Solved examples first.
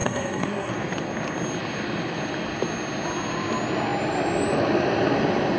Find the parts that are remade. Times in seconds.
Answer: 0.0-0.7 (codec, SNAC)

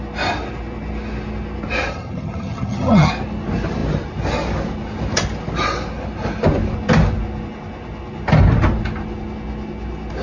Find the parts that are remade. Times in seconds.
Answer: 1.9-3.1 (vocoder, HiFi-GAN)